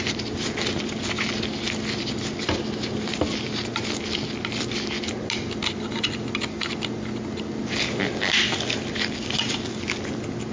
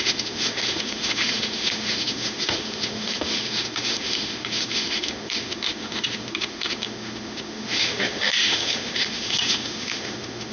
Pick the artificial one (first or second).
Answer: second